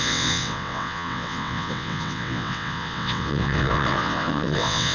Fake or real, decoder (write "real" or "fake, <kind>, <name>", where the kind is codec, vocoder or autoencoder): fake, vocoder, WaveNeXt